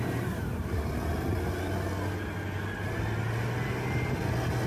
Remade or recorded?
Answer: recorded